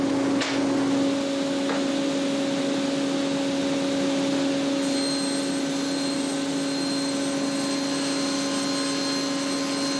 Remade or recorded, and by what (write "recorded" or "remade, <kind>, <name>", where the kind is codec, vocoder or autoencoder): recorded